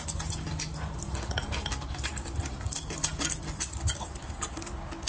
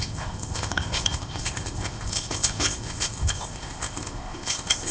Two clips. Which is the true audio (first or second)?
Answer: first